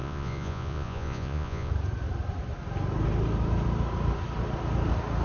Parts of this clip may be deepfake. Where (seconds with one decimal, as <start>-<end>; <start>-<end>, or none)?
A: 0.0-1.7